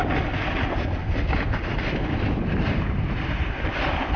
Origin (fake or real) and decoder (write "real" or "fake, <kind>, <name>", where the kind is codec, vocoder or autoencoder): real